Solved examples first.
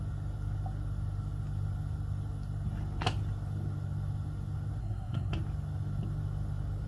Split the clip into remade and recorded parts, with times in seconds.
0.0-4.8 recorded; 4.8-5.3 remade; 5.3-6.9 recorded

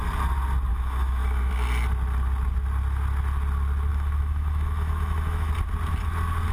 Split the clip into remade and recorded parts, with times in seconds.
0.0-0.7 recorded; 0.7-1.5 remade; 1.5-3.9 recorded; 3.9-5.5 remade; 5.5-6.5 recorded

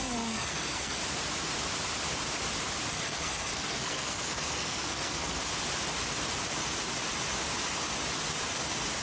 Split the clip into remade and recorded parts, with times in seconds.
0.0-1.0 remade; 1.0-2.9 recorded; 2.9-5.4 remade; 5.4-9.0 recorded